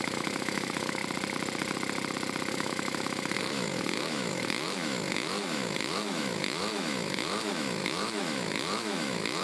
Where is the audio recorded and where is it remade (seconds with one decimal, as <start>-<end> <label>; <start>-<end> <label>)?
0.0-1.0 remade; 1.0-2.5 recorded; 2.5-9.4 remade